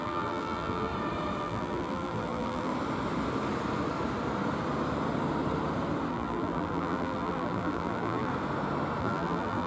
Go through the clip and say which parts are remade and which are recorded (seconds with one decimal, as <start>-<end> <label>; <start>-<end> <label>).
0.0-0.9 remade; 0.9-1.4 recorded; 1.4-2.7 remade; 2.7-6.1 recorded; 6.1-8.3 remade; 8.3-9.0 recorded; 9.0-9.7 remade